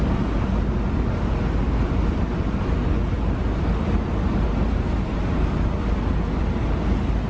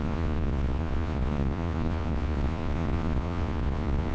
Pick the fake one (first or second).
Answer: second